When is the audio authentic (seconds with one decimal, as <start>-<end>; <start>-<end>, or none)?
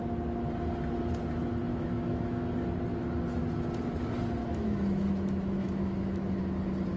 0.0-1.7; 2.5-4.4; 6.4-7.0